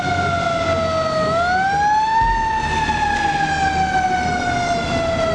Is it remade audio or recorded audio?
recorded